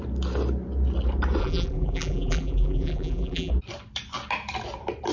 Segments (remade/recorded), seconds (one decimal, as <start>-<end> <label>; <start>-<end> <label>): 0.0-1.4 recorded; 1.4-3.5 remade; 3.5-5.1 recorded